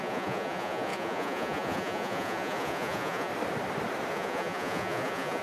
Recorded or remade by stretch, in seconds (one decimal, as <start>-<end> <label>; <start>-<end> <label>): 0.0-3.3 remade; 3.3-4.1 recorded; 4.1-5.4 remade